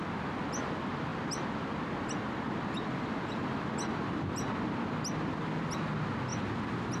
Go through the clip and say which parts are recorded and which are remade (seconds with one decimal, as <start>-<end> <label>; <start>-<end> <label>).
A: 0.0-7.0 recorded